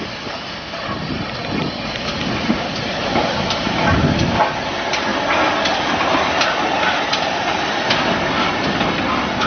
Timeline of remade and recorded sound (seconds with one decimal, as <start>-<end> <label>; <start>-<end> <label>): 0.0-9.5 recorded